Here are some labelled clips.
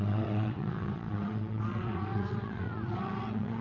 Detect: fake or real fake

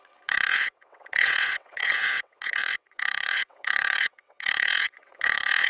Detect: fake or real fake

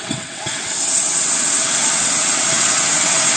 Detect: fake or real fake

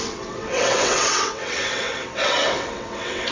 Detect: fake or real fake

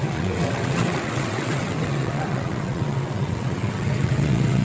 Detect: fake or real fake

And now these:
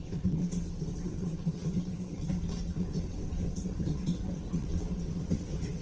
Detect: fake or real fake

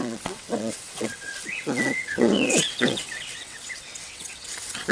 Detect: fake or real fake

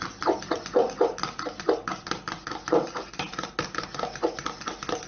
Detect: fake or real real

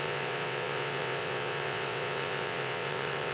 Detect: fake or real fake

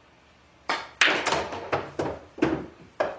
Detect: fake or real real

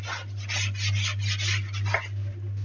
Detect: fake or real real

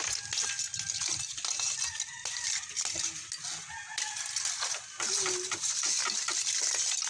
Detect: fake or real real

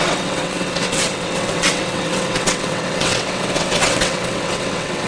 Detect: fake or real fake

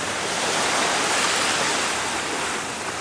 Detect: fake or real real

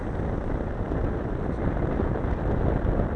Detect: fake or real real